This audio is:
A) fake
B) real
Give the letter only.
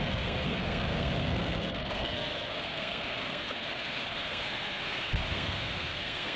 A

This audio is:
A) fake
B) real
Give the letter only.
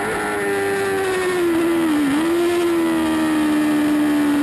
B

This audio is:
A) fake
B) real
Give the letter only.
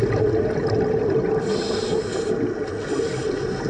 B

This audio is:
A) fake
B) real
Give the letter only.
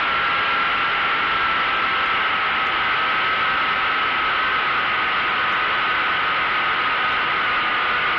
B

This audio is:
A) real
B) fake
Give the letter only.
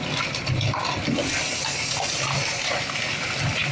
A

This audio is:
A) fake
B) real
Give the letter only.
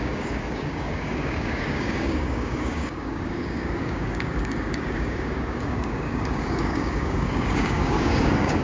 A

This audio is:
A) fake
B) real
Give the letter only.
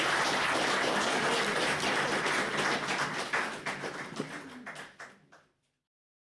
B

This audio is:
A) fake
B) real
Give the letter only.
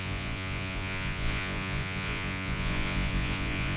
A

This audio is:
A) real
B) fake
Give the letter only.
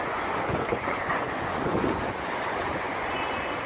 B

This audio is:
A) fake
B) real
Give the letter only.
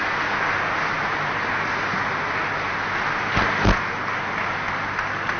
B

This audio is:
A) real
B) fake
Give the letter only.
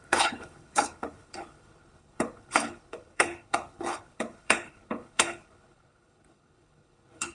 B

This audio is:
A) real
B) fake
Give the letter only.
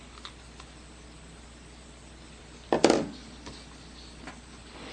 A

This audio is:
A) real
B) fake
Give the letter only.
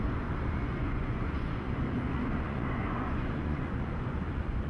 B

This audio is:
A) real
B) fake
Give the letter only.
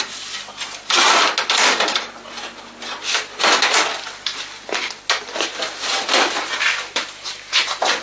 A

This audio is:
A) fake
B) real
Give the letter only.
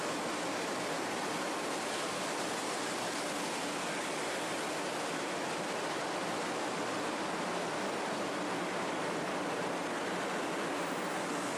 B